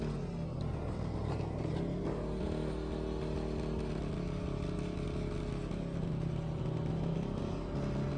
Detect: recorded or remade recorded